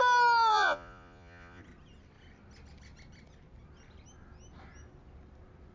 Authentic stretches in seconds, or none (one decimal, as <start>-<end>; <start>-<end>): 0.0-0.5; 1.6-5.7